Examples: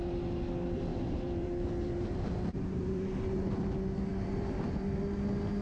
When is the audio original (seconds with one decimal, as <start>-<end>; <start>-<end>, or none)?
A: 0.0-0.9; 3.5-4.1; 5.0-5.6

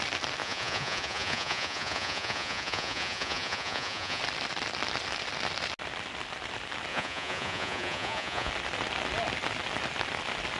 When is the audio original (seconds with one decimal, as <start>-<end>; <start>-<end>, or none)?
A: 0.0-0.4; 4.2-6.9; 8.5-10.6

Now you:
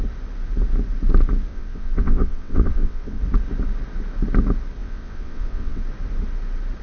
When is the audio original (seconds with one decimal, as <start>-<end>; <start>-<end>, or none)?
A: 0.0-1.5; 3.2-4.8; 5.8-6.8